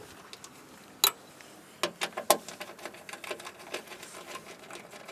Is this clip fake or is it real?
real